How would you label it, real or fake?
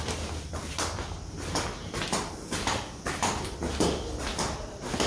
real